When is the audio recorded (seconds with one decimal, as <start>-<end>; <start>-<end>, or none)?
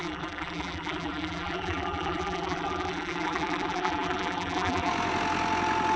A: 4.9-6.0